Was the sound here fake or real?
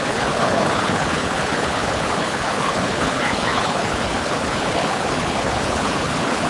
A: fake